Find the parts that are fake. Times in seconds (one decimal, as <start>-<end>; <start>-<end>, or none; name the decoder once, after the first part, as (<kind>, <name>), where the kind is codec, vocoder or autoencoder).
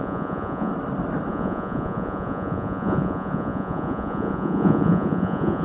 0.0-0.7 (vocoder, Vocos); 1.3-5.6